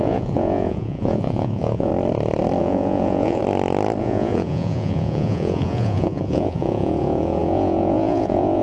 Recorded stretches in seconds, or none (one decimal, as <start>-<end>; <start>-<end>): 1.9-2.6; 3.4-4.0